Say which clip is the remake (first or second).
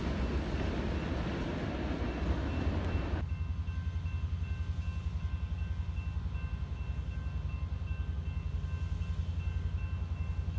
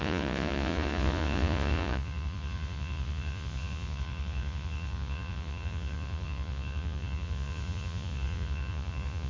second